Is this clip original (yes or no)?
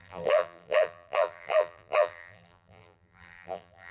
no